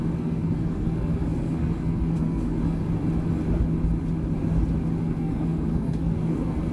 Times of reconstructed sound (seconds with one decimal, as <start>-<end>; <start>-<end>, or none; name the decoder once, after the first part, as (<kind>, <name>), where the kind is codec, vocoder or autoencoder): 0.0-2.8 (codec, SNAC); 5.0-6.7